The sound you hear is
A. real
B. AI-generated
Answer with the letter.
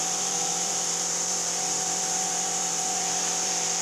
B